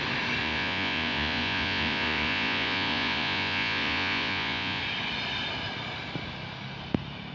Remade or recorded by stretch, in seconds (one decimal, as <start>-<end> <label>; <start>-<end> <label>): 0.0-0.4 recorded; 0.4-4.8 remade; 4.8-7.3 recorded